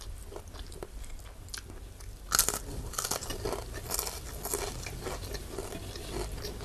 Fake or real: real